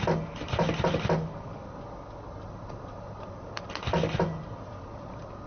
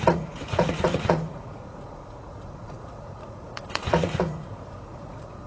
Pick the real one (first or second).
first